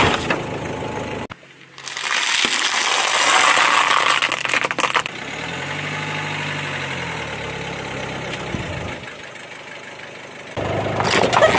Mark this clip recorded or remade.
recorded